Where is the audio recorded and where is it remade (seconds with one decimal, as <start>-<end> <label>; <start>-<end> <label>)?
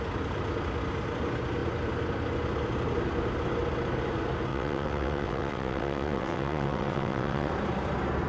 0.0-4.5 recorded; 4.5-7.5 remade; 7.5-8.3 recorded